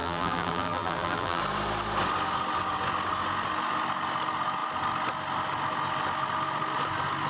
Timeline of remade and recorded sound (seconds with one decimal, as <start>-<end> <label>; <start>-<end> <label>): 0.0-1.4 remade; 1.4-7.3 recorded